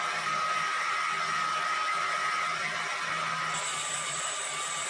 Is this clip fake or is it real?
real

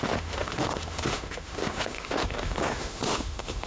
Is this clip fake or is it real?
fake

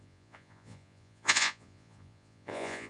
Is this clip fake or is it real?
fake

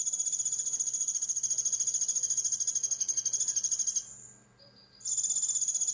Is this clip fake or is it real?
real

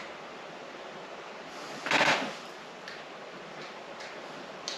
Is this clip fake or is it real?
real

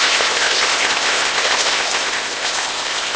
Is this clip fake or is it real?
fake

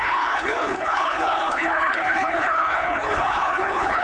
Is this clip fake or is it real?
fake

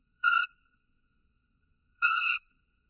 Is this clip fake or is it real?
fake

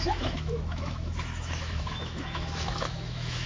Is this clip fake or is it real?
fake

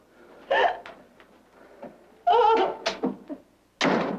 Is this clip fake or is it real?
real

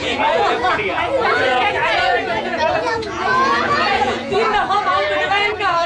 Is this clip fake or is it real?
fake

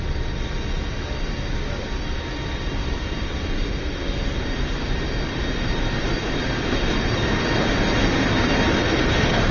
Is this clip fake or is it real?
real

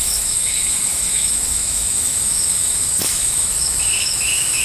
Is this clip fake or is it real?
fake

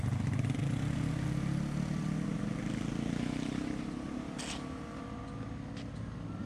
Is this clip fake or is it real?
real